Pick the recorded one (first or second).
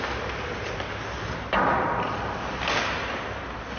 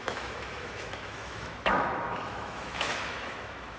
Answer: first